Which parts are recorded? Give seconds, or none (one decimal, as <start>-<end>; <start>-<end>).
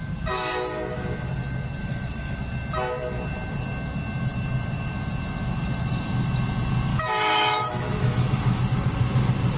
0.0-1.8; 2.4-6.9; 8.6-9.6